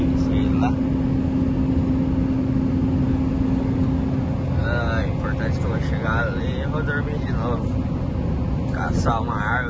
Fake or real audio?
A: real